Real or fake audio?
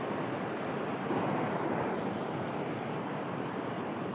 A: real